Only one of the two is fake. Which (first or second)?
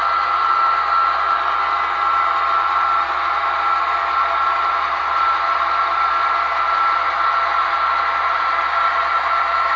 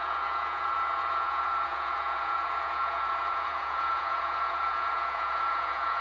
second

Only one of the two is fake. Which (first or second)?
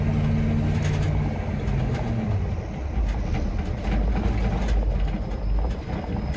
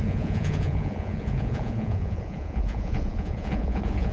second